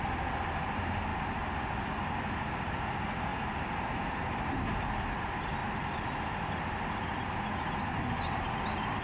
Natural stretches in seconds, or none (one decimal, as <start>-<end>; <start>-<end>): 0.0-3.3; 4.7-5.6; 6.5-9.0